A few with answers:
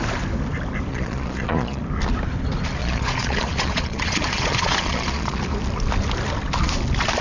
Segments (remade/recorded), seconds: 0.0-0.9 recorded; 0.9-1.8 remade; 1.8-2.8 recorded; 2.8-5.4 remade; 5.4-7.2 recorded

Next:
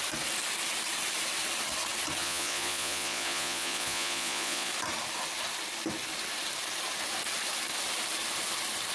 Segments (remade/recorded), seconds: 0.0-2.2 recorded; 2.2-4.7 remade; 4.7-8.9 recorded

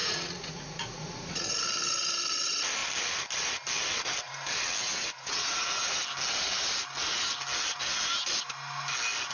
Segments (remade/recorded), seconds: 0.0-1.5 remade; 1.5-4.8 recorded; 4.8-6.0 remade; 6.0-9.3 recorded

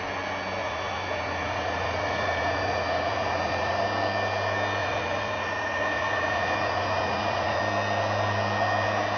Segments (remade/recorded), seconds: 0.0-0.6 recorded; 0.6-3.8 remade; 3.8-4.8 recorded; 4.8-7.6 remade; 7.6-9.2 recorded

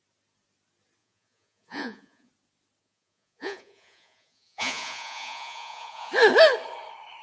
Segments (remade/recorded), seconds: 0.0-1.0 recorded; 1.0-2.3 remade; 2.3-2.8 recorded; 2.8-6.1 remade; 6.1-7.2 recorded

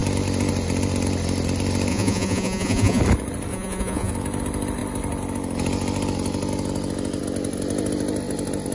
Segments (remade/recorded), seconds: 0.0-1.9 recorded; 1.9-3.0 remade; 3.0-3.5 recorded; 3.5-4.1 remade; 4.1-8.7 recorded

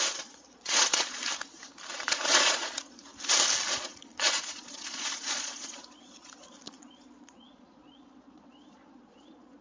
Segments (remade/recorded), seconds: 0.0-1.2 remade; 1.2-1.9 recorded; 1.9-3.1 remade; 3.1-3.7 recorded; 3.7-9.6 remade